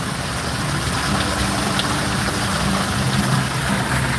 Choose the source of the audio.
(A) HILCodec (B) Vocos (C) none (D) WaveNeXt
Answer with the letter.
C